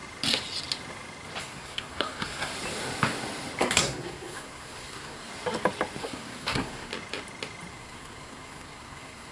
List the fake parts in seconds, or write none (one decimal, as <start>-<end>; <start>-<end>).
1.4-2.5; 3.6-5.3; 6.0-6.9; 7.7-9.3